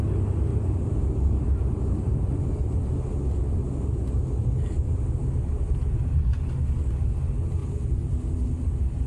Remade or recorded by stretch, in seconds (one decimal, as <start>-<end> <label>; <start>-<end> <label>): 0.0-0.5 recorded; 0.5-2.4 remade; 2.4-7.6 recorded; 7.6-8.3 remade; 8.3-9.1 recorded